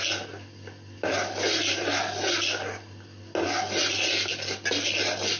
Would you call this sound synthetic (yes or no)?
no